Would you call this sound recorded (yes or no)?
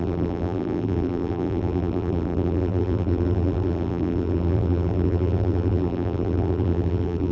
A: no